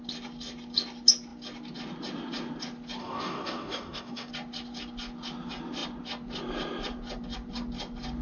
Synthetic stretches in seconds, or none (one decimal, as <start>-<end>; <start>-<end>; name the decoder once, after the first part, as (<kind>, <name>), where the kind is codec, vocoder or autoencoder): 3.0-4.3 (codec, DAC)